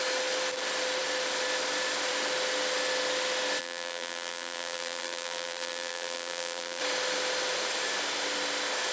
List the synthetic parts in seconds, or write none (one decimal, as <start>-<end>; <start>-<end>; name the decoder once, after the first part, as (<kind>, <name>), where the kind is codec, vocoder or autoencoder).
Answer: 3.6-6.8 (vocoder, BigVGAN v2)

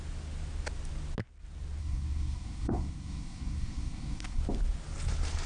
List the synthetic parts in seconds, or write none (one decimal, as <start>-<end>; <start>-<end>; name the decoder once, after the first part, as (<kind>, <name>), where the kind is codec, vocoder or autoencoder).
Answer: 1.8-4.4 (codec, SNAC)

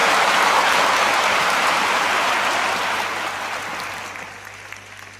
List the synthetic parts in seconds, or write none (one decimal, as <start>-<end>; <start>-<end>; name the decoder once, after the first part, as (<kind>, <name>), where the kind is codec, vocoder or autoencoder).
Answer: 0.0-2.3 (vocoder, BigVGAN v2)

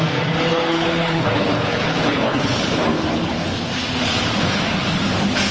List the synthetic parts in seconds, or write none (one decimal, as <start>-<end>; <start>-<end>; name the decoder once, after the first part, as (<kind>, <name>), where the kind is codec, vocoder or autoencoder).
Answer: 0.5-3.7 (codec, HILCodec)